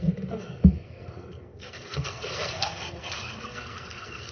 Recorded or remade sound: remade